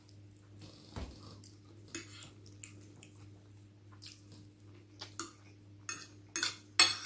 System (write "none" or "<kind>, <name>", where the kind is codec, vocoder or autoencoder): none